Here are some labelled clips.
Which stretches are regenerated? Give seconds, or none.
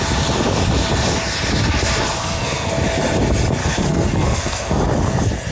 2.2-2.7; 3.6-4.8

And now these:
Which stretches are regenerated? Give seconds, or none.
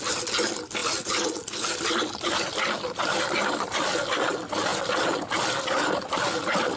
none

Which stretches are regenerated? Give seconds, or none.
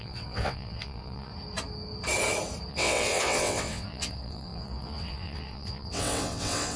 0.0-1.3; 2.7-6.8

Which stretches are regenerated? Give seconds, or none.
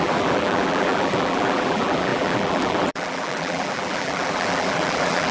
0.0-5.3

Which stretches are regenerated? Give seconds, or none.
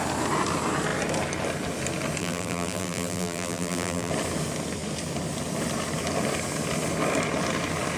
2.2-4.1